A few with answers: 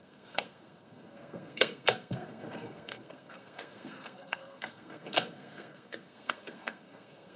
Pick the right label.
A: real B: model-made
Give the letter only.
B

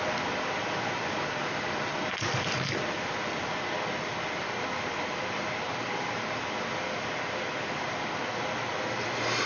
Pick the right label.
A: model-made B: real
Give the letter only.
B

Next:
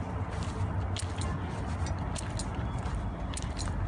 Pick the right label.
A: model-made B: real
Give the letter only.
B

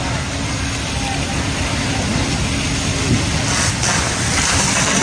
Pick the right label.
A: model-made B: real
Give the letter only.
B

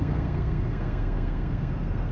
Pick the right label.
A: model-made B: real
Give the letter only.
A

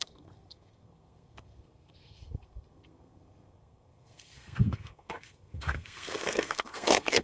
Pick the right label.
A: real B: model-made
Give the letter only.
B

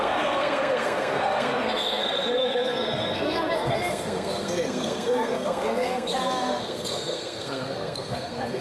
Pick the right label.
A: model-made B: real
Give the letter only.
A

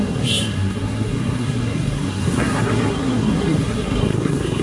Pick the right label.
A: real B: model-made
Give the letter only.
B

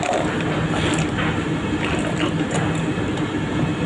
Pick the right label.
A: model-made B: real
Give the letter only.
B